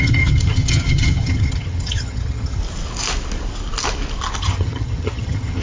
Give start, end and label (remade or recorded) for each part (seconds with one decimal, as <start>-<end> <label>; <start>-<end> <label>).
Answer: 0.0-2.6 remade; 2.6-4.4 recorded; 4.4-5.6 remade